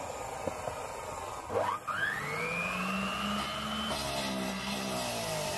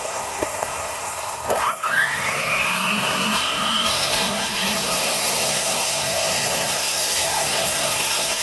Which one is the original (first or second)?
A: first